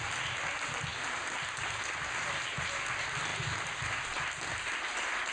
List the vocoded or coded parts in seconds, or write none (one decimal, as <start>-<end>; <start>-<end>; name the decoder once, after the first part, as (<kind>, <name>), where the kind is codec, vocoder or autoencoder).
none